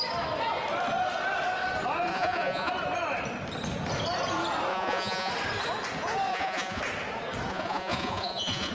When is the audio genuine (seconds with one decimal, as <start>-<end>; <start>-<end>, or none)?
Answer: 0.0-2.1; 2.7-4.7; 5.3-6.3; 6.8-7.5